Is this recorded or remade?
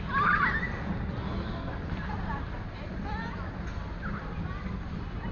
recorded